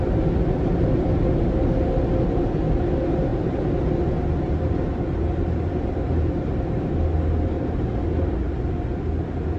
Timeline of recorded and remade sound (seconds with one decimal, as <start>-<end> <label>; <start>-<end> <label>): 0.0-9.6 recorded